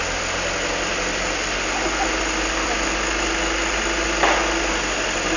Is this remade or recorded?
recorded